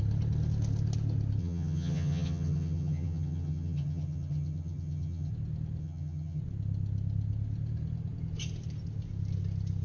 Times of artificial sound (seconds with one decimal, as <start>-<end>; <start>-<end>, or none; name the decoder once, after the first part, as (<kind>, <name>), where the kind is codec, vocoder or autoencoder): 1.4-5.3 (vocoder, HiFi-GAN); 5.8-6.4